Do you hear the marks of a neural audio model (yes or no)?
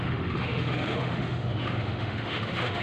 yes